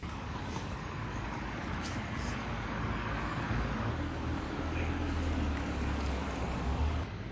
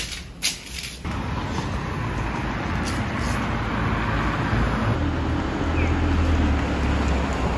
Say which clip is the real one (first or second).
second